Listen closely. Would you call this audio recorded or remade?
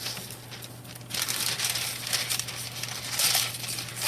recorded